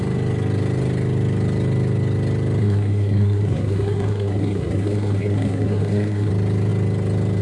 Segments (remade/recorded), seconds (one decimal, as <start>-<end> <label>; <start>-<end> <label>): 0.0-2.6 recorded; 2.6-6.3 remade; 6.3-7.4 recorded

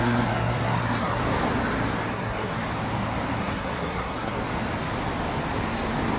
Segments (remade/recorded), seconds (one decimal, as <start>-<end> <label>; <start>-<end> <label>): 0.0-1.2 remade; 1.2-2.1 recorded; 2.1-2.5 remade; 2.5-3.4 recorded; 3.4-4.4 remade; 4.4-6.2 recorded

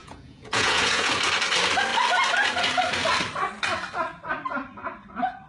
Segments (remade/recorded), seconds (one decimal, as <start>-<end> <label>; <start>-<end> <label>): 0.0-1.1 remade; 1.1-5.5 recorded

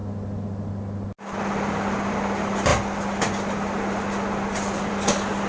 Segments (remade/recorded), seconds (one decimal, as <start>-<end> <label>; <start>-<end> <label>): 0.0-5.5 recorded

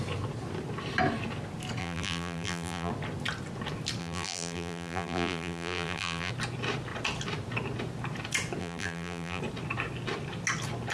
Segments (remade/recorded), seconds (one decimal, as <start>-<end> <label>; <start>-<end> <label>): 0.0-1.8 recorded; 1.8-2.9 remade; 2.9-4.0 recorded; 4.0-6.3 remade; 6.3-8.6 recorded; 8.6-9.4 remade; 9.4-10.9 recorded

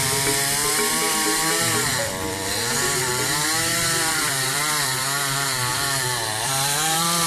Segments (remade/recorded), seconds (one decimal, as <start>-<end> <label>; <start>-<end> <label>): 0.0-0.6 recorded; 0.6-3.1 remade; 3.1-3.7 recorded; 3.7-5.0 remade; 5.0-5.7 recorded; 5.7-7.3 remade